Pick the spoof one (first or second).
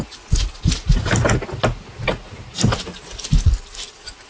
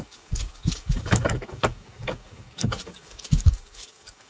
second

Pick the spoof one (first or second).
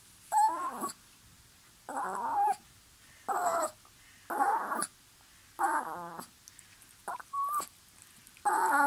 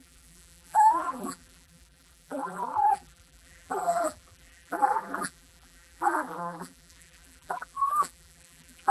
second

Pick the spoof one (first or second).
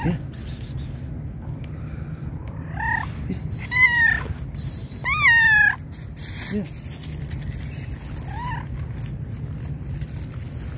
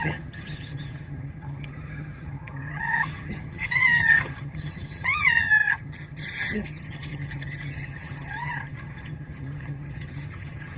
second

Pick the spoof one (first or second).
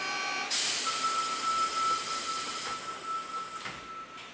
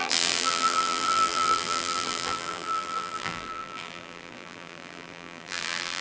second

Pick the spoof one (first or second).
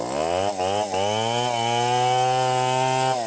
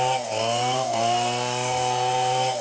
second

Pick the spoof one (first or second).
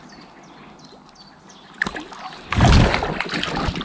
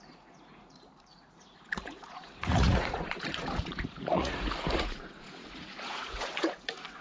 second